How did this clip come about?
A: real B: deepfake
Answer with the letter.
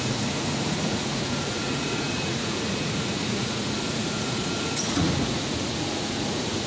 B